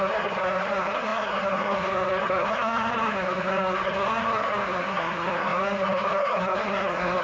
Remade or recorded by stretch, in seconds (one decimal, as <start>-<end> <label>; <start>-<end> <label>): 0.0-7.2 remade